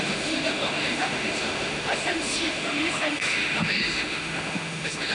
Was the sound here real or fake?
fake